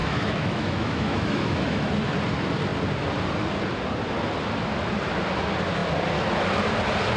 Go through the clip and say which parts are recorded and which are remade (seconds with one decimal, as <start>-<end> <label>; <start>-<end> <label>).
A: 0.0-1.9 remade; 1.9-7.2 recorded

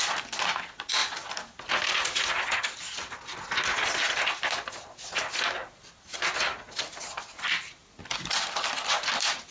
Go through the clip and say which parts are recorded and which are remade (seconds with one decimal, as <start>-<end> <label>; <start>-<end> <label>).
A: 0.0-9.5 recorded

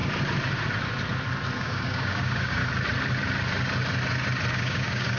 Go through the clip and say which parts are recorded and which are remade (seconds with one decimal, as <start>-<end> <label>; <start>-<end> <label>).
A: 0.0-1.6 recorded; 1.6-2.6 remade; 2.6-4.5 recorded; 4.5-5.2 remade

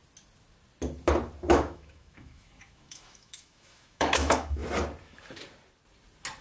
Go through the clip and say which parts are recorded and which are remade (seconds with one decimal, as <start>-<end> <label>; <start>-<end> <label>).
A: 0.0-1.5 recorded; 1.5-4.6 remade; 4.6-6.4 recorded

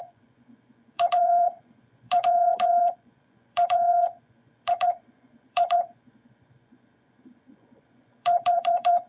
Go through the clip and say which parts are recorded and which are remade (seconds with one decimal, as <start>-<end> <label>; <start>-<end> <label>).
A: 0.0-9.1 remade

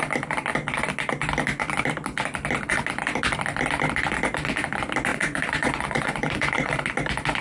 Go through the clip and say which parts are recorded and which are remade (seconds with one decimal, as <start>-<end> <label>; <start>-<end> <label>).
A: 0.0-5.1 recorded; 5.1-6.7 remade; 6.7-7.4 recorded

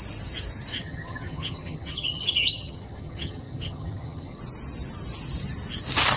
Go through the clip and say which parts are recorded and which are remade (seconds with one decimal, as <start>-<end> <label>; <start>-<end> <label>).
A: 0.0-0.7 recorded; 0.7-4.4 remade; 4.4-6.2 recorded